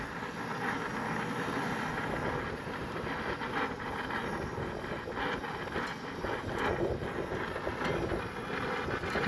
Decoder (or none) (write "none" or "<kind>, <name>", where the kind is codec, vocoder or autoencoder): none